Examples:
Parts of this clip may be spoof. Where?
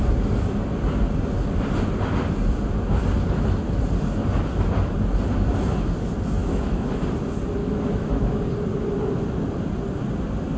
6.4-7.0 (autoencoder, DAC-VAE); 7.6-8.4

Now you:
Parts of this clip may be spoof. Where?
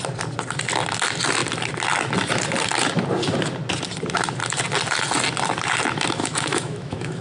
6.2-7.2 (autoencoder, DAC-VAE)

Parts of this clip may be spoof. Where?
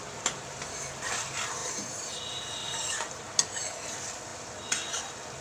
0.0-1.2 (vocoder, BigVGAN v2); 1.6-2.2; 2.6-3.2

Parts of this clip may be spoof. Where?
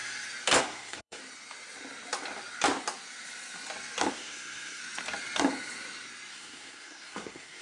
0.6-1.2 (codec, SNAC); 4.1-4.8; 6.3-7.6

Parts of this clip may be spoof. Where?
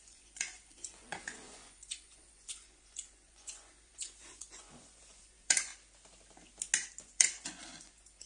0.0-5.7 (vocoder, Vocos); 7.0-8.3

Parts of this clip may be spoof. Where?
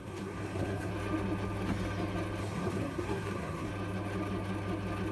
0.0-0.9 (codec, SNAC); 2.4-3.7